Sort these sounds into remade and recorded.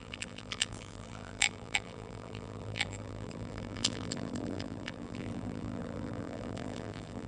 remade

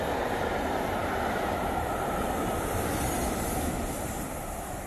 remade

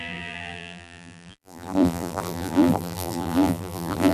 remade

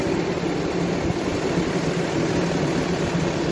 recorded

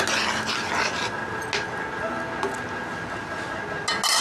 recorded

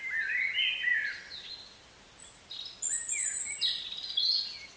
recorded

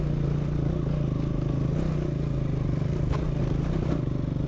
recorded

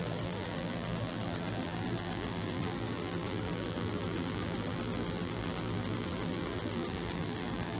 remade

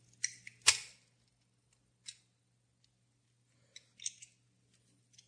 recorded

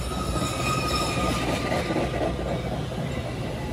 recorded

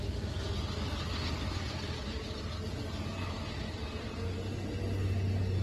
recorded